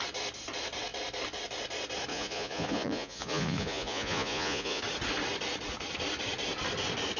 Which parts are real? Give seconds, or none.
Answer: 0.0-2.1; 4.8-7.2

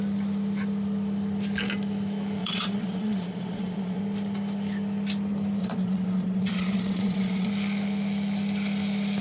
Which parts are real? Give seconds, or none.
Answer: 0.0-2.4; 4.0-5.6; 7.5-9.2

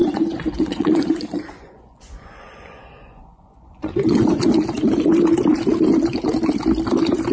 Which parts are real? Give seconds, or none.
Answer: 4.4-7.3

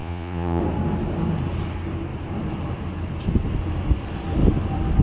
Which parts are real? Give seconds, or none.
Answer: 0.6-5.0

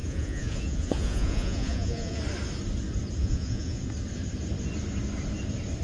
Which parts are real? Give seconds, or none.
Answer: 2.2-3.2; 3.8-5.8

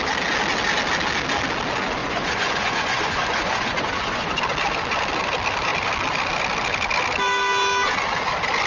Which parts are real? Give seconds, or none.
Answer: 0.0-2.0; 4.4-8.7

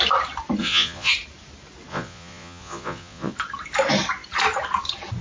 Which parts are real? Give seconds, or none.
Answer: 0.0-0.6; 1.1-1.9; 3.3-5.2

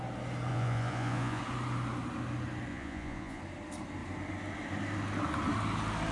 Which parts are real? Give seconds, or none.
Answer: 0.0-0.5; 1.4-2.7; 3.4-6.1